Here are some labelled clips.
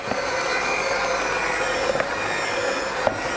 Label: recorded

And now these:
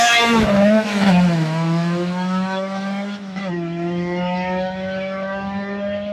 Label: remade